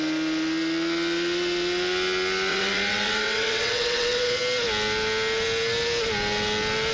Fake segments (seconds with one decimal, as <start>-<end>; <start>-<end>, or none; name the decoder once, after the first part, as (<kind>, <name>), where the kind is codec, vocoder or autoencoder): 2.5-4.4 (vocoder, WaveNeXt)